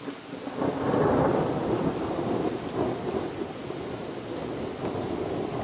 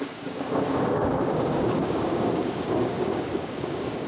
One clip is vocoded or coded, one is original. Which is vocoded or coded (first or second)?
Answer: second